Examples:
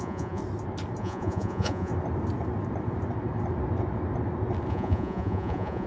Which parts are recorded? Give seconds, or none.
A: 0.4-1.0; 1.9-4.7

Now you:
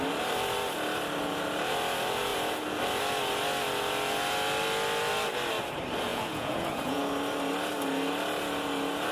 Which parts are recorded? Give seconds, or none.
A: 0.0-6.1; 7.0-9.1

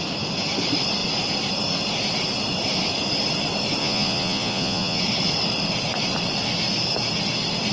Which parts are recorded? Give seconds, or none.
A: 0.0-3.8; 5.0-7.7

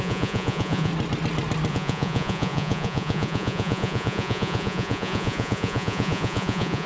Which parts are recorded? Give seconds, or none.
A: 0.9-1.7

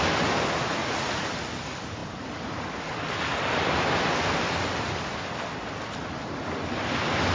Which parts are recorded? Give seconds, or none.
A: 0.0-0.8; 1.3-7.3

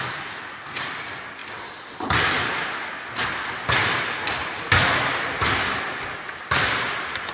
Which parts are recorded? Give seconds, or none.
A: 0.0-7.3

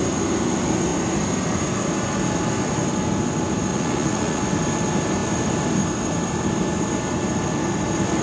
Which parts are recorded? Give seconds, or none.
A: 0.0-3.7; 4.4-8.2